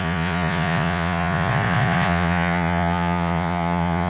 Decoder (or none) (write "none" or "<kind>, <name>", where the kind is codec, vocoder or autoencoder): vocoder, Vocos